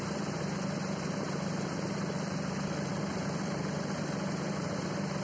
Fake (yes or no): no